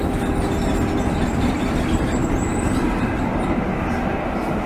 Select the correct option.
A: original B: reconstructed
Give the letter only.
B